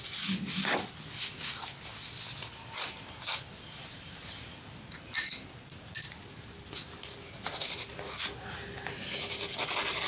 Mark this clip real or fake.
real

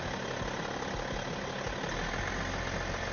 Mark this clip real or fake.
real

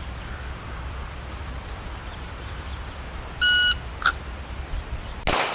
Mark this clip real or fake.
real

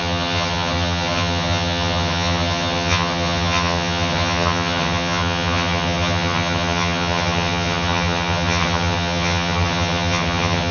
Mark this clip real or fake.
fake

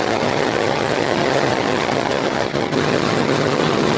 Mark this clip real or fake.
fake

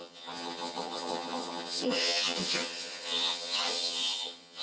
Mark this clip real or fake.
fake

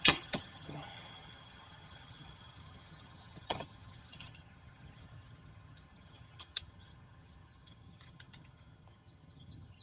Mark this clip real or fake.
fake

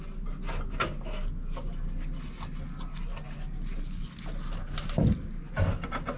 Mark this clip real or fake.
real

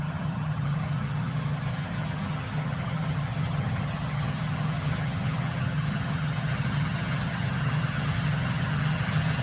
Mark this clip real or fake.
fake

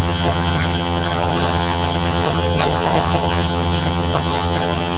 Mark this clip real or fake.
fake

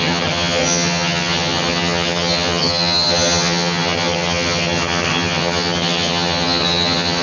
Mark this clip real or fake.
fake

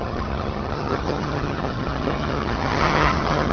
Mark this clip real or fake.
fake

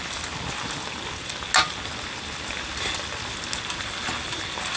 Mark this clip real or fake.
real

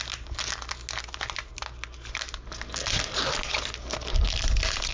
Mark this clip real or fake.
real